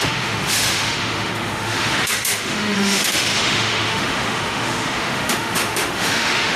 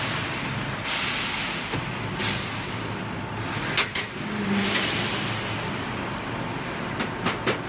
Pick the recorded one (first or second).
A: second